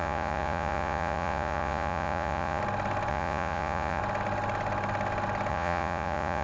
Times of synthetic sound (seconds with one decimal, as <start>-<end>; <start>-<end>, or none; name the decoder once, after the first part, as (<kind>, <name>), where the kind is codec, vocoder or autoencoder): 0.0-2.6 (vocoder, Vocos); 3.1-4.0; 5.5-6.4